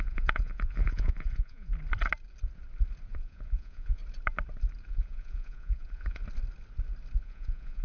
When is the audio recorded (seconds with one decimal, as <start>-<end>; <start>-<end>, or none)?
1.7-3.1; 4.0-4.9; 6.2-7.2